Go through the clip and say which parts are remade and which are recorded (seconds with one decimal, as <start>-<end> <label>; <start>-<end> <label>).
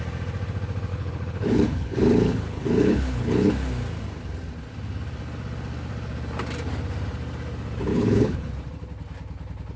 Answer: 0.0-0.9 recorded; 0.9-3.5 remade; 3.5-7.9 recorded; 7.9-8.5 remade; 8.5-9.8 recorded